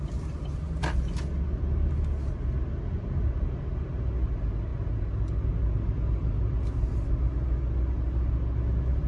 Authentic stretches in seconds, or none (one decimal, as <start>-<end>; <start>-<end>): 0.0-9.1